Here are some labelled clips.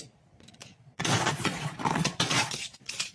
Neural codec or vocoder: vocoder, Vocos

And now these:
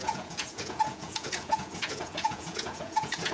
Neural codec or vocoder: vocoder, Vocos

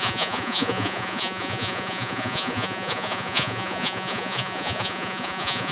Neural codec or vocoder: vocoder, Vocos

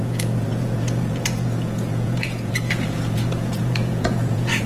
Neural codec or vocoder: vocoder, Vocos